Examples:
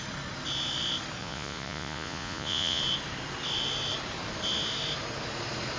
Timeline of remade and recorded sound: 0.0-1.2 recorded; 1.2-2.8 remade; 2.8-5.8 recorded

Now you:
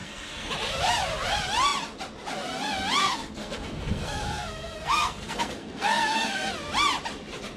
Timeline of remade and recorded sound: 0.0-0.5 remade; 0.5-3.0 recorded; 3.0-6.5 remade; 6.5-7.6 recorded

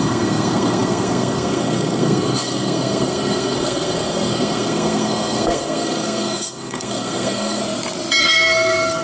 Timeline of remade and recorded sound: 0.0-7.6 remade; 7.6-8.2 recorded; 8.2-9.0 remade

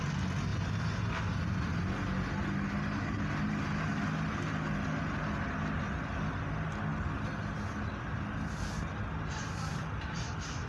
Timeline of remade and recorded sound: 0.0-10.7 recorded

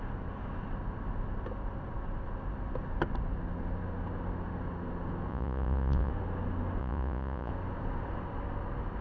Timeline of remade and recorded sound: 0.0-5.3 recorded; 5.3-6.1 remade; 6.1-6.8 recorded; 6.8-7.5 remade; 7.5-9.0 recorded